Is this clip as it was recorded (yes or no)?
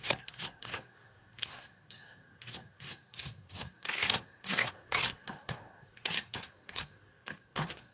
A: no